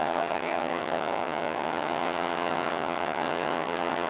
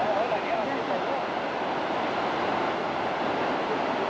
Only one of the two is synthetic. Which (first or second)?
first